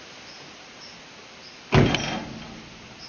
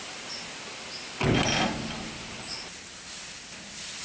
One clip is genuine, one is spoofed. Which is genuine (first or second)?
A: first